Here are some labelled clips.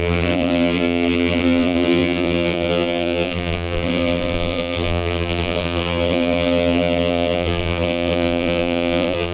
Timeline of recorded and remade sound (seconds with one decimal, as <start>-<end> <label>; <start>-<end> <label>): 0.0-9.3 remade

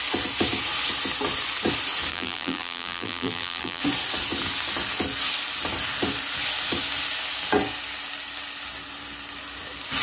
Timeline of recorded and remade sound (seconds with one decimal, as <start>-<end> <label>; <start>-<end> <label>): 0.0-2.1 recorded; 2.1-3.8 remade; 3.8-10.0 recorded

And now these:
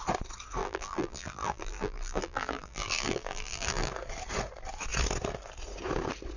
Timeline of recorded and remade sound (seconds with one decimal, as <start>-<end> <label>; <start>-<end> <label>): 0.0-0.6 recorded; 0.6-3.9 remade; 3.9-6.4 recorded